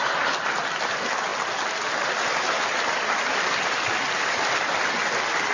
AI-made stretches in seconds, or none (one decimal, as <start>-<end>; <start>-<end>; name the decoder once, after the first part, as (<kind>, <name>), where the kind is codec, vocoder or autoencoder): none